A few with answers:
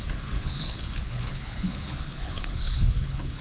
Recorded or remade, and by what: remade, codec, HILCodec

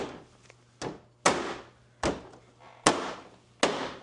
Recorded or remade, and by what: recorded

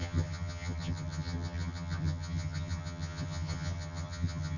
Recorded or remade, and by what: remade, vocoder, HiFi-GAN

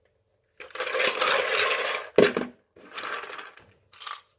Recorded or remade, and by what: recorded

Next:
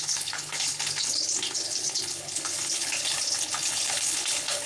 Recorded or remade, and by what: remade, codec, HILCodec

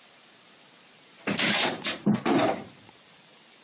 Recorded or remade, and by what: remade, vocoder, BigVGAN v2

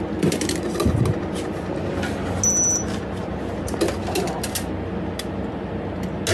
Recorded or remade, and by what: recorded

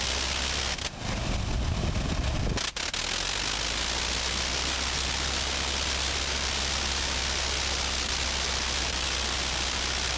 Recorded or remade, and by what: recorded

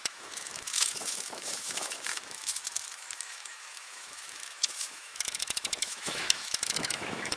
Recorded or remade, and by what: remade, autoencoder, DAC-VAE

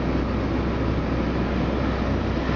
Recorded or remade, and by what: recorded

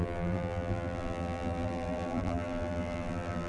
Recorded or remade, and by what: remade, vocoder, BigVGAN v2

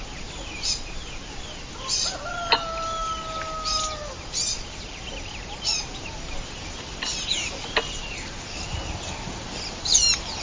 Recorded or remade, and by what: recorded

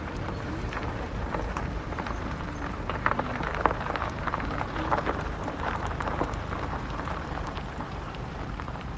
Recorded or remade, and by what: remade, vocoder, BigVGAN v2